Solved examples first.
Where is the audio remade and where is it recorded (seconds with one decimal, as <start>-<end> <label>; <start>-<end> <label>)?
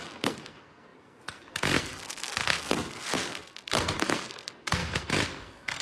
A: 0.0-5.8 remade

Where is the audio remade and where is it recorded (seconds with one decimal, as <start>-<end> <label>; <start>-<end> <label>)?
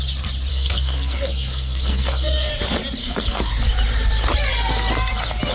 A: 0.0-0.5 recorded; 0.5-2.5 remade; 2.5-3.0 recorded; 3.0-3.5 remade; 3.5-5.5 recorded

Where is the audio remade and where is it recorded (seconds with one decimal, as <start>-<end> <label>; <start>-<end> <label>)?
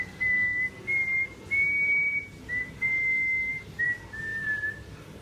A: 0.0-5.2 recorded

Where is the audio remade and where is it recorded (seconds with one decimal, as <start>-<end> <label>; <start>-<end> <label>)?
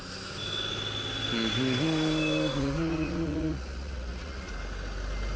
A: 0.0-2.6 recorded; 2.6-4.5 remade; 4.5-5.4 recorded